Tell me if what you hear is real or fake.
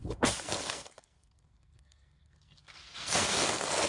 fake